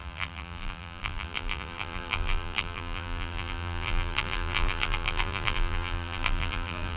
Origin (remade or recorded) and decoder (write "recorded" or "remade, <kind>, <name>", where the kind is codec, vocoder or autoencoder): remade, vocoder, BigVGAN v2